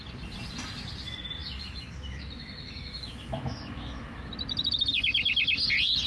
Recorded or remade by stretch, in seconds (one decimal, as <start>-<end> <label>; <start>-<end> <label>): 0.0-1.4 recorded; 1.4-4.3 remade; 4.3-6.1 recorded